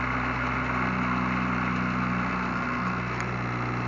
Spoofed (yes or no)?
no